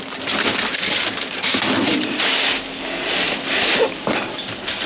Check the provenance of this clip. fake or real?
real